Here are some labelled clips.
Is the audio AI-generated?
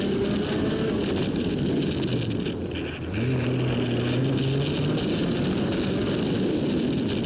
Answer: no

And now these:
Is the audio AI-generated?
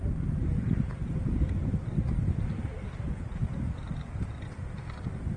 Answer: no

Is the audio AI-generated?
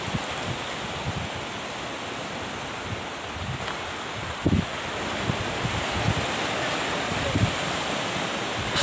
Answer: no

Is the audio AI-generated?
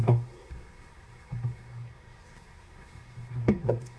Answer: yes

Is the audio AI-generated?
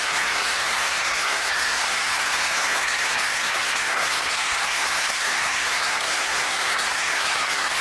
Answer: yes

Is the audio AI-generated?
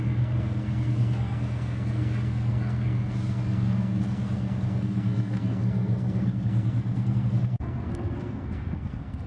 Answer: yes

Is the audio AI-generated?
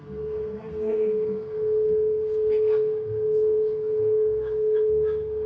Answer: yes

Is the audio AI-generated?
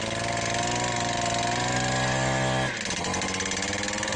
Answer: no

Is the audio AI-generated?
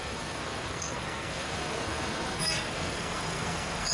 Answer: yes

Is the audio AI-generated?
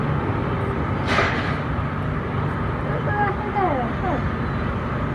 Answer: no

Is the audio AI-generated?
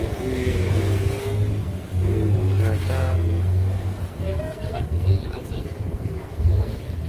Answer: yes